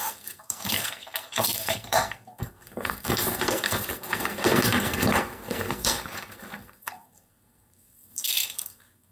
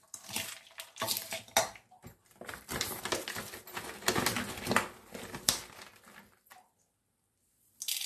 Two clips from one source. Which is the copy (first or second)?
first